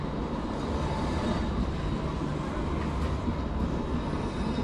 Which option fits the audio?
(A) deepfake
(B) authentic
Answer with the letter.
B